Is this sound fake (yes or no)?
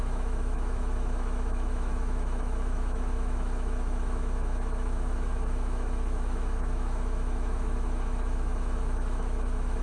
yes